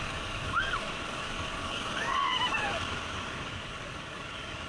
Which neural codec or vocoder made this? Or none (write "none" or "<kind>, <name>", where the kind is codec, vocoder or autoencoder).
codec, DAC